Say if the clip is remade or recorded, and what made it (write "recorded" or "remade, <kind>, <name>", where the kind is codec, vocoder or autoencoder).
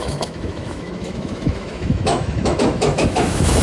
remade, autoencoder, DAC-VAE